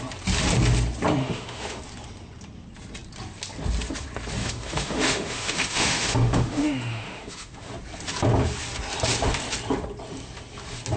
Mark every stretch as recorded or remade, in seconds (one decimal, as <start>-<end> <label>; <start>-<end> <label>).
0.0-1.2 recorded; 1.2-1.8 remade; 1.8-4.4 recorded; 4.4-7.7 remade; 7.7-11.0 recorded